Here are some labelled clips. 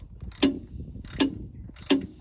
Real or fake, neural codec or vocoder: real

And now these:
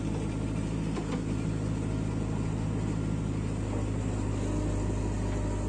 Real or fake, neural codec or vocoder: real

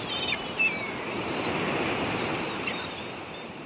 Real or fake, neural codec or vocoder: fake, vocoder, BigVGAN v2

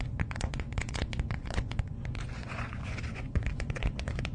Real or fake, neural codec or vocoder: fake, vocoder, Vocos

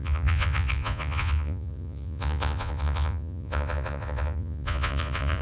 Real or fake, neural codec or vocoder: fake, vocoder, Vocos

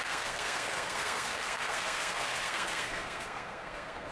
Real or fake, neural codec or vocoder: fake, codec, SNAC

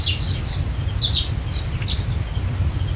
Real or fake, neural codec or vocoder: real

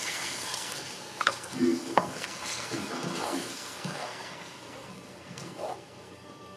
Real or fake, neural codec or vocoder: fake, codec, SNAC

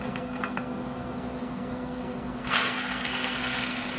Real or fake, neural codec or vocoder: fake, codec, SNAC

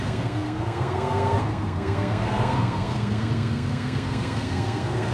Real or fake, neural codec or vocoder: fake, codec, SNAC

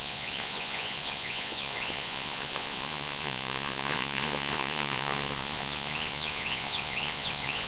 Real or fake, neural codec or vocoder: fake, vocoder, Vocos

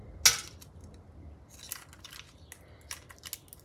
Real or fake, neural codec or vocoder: real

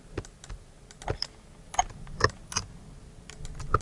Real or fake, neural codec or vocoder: real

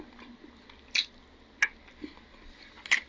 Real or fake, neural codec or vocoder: real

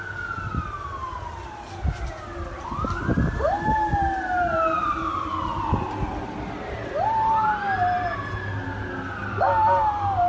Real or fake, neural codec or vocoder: real